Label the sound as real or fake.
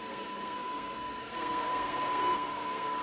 fake